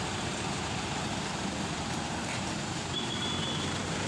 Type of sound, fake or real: fake